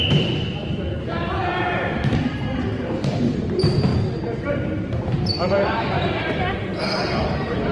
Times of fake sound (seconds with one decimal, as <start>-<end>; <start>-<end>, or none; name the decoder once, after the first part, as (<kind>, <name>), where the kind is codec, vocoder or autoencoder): 0.0-0.6 (vocoder, BigVGAN v2); 1.6-3.9; 4.5-6.7; 7.2-7.7